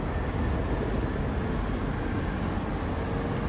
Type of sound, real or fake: real